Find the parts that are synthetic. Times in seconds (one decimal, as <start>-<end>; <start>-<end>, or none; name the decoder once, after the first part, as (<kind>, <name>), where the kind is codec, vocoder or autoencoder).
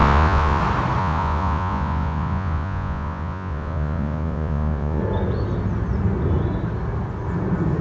0.0-0.6 (vocoder, Vocos); 1.0-5.0